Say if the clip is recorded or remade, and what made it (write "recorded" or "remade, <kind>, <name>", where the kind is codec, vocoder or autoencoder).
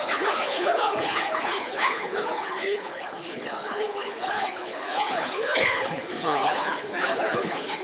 remade, codec, HILCodec